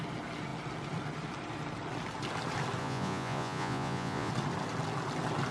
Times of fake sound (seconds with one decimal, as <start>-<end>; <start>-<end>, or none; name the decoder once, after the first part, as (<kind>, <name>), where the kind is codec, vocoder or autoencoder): 2.8-4.3 (vocoder, Vocos)